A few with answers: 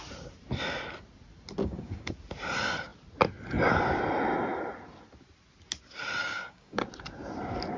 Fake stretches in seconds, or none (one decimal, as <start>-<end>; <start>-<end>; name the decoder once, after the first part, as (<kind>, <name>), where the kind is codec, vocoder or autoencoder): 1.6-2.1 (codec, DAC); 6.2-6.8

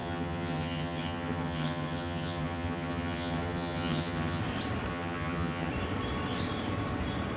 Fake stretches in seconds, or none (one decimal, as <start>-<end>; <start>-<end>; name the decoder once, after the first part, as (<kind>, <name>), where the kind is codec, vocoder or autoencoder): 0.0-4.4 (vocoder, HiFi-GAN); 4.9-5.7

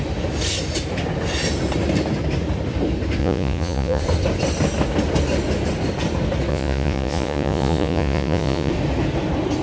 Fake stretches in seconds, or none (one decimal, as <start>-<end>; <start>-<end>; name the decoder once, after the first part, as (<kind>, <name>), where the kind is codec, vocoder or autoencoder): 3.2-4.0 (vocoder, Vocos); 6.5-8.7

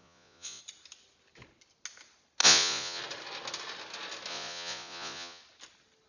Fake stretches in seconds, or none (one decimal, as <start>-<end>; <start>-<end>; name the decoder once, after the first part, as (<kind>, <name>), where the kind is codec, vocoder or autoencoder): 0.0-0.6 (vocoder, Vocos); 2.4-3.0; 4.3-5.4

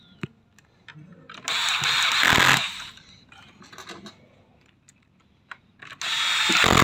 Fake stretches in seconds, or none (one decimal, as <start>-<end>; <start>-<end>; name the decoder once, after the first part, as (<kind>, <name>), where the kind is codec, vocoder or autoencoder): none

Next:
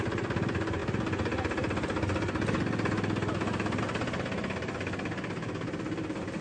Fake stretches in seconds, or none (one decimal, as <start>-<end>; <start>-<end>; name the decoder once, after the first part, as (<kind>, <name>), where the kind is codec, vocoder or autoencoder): none